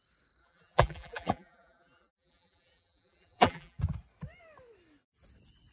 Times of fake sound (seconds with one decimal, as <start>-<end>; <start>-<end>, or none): 0.4-3.8